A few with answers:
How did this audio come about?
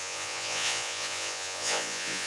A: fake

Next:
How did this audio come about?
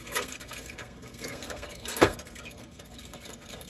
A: fake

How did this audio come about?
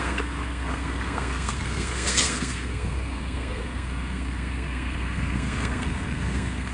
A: fake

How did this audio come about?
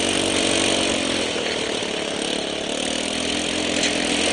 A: real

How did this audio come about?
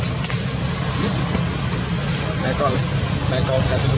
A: real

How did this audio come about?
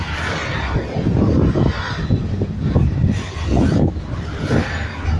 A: real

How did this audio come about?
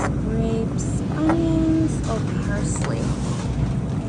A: real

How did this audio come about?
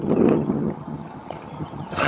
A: fake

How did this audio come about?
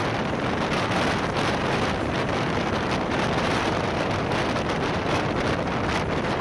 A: fake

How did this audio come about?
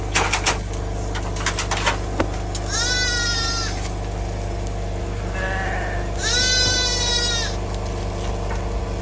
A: real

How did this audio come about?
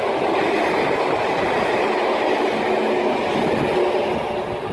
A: real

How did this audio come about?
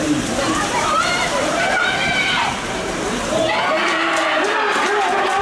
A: fake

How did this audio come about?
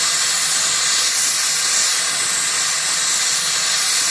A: real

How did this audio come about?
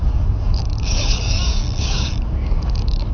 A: fake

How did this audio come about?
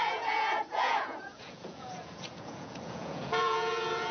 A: fake